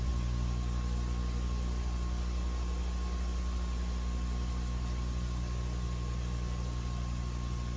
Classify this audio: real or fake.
real